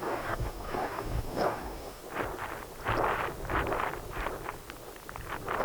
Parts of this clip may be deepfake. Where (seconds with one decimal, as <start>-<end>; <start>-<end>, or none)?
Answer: 0.0-2.0